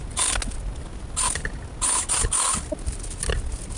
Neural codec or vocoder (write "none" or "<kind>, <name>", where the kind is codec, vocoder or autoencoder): none